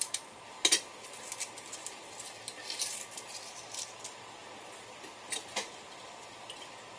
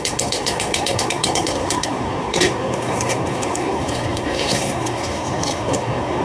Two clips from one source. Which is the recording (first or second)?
first